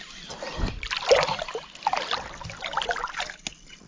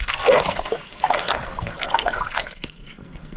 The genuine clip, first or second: first